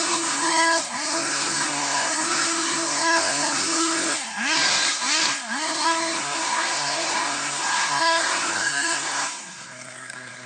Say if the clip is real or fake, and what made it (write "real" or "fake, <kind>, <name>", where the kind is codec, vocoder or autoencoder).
fake, codec, SNAC